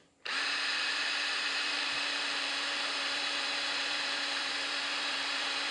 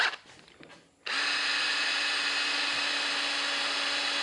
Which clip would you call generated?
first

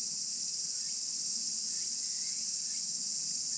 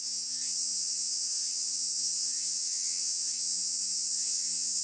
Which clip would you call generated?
second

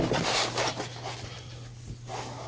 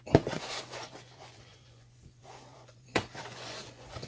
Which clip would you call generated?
second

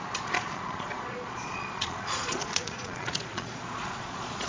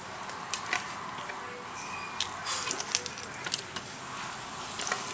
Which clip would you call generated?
first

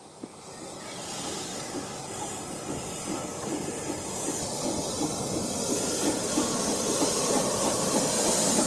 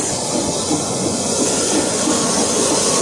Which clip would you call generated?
second